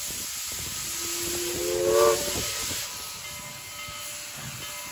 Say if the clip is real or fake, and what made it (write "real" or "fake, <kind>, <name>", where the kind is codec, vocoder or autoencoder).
real